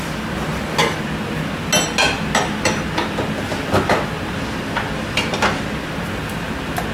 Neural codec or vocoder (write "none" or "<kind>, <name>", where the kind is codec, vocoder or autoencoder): none